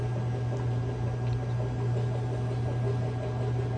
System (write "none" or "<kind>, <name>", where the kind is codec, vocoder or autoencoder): none